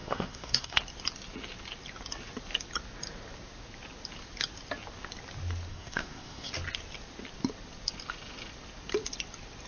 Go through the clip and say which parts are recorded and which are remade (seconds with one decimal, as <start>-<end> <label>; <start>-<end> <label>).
0.0-0.8 remade; 0.8-5.7 recorded; 5.7-6.5 remade; 6.5-9.7 recorded